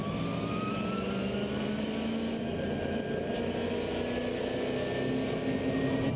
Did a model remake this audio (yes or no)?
no